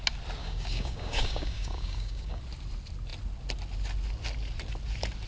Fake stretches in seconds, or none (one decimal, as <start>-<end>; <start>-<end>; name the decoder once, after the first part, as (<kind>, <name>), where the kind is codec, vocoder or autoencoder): 0.4-2.4 (codec, DAC)